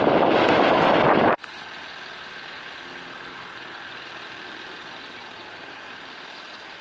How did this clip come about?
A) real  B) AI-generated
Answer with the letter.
A